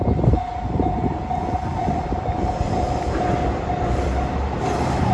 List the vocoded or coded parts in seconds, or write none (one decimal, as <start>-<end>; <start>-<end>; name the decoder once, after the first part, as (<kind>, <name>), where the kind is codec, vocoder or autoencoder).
1.8-5.1 (vocoder, BigVGAN v2)